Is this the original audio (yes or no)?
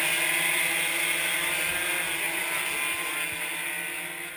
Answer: yes